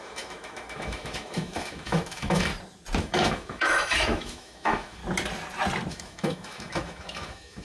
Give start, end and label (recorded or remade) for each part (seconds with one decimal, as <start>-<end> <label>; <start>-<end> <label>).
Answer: 0.0-2.5 remade; 2.5-3.0 recorded; 3.0-5.0 remade; 5.0-5.9 recorded; 5.9-7.6 remade